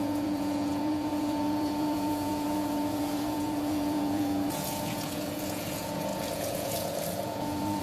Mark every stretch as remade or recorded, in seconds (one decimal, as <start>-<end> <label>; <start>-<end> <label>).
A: 0.0-7.8 remade